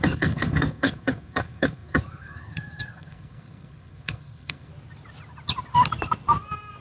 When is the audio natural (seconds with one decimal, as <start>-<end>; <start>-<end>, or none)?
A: 4.7-6.8